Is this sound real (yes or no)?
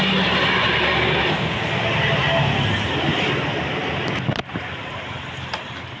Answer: yes